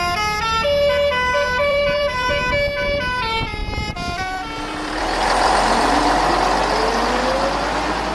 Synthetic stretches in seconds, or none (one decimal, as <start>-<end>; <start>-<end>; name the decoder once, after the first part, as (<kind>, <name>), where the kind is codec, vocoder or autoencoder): 1.7-2.3 (vocoder, BigVGAN v2); 3.6-6.3